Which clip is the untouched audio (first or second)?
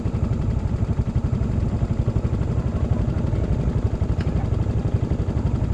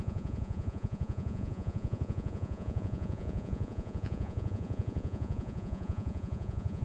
first